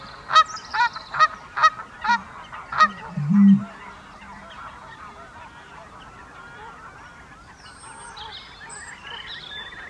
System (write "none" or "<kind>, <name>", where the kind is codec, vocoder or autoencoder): none